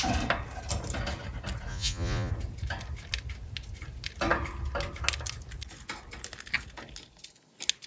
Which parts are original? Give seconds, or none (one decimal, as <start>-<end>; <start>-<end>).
0.0-1.7; 2.3-7.9

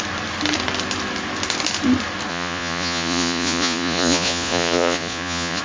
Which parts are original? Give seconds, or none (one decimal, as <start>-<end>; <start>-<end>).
0.0-2.3